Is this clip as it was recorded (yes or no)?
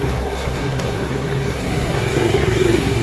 no